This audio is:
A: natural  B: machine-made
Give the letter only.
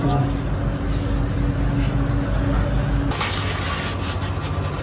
A